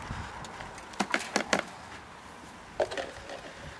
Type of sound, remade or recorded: recorded